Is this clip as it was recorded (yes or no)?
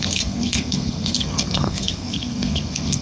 no